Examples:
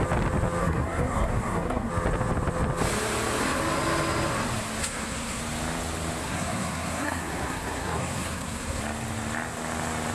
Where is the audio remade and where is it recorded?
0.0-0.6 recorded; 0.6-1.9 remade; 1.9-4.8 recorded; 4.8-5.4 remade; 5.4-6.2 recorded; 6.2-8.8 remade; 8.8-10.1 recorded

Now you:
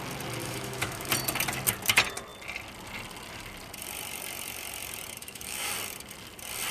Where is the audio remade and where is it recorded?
0.0-0.4 recorded; 0.4-1.1 remade; 1.1-5.2 recorded; 5.2-5.7 remade; 5.7-6.7 recorded

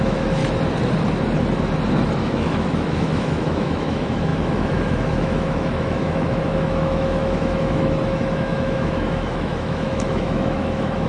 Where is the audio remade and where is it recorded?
0.0-0.4 remade; 0.4-2.2 recorded; 2.2-11.1 remade

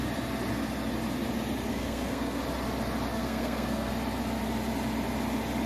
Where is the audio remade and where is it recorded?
0.0-1.7 recorded; 1.7-2.4 remade; 2.4-3.1 recorded; 3.1-3.9 remade; 3.9-5.7 recorded

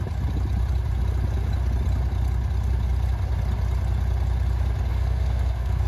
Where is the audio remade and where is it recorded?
0.0-4.9 recorded; 4.9-5.9 remade

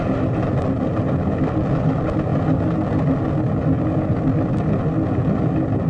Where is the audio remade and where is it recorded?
0.0-5.9 recorded